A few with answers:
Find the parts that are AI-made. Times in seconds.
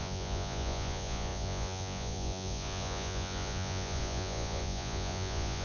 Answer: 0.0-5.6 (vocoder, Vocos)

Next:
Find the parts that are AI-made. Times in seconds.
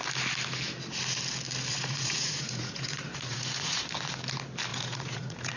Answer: 1.7-3.8 (vocoder, Vocos); 4.7-5.6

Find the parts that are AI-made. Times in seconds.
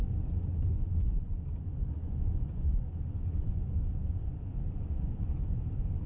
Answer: 0.0-6.1 (vocoder, Vocos)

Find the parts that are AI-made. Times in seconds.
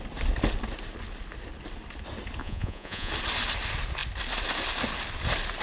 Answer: 2.4-3.1 (vocoder, Vocos)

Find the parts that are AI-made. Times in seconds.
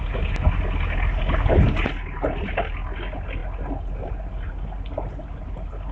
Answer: none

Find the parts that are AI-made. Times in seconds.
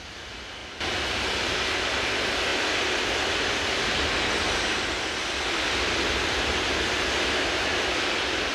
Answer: none